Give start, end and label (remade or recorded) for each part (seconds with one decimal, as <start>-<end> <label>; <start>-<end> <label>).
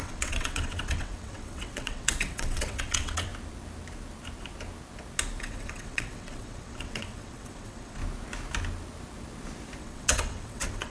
0.0-3.3 remade; 3.3-5.4 recorded; 5.4-8.0 remade; 8.0-9.8 recorded; 9.8-10.9 remade